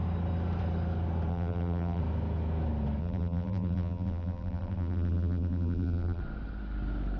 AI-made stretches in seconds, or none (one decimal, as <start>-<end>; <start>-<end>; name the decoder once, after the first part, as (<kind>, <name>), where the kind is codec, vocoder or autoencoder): 1.3-2.0 (vocoder, BigVGAN v2); 3.0-6.2